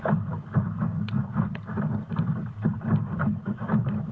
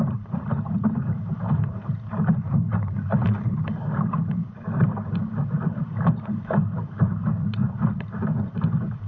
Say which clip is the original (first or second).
first